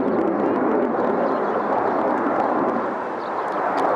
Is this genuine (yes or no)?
yes